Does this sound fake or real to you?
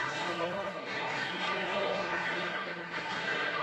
fake